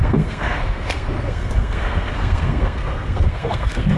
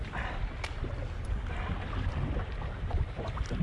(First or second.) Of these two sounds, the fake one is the first